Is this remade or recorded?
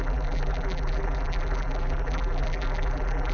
remade